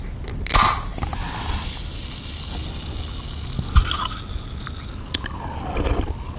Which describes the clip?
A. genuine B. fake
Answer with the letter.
A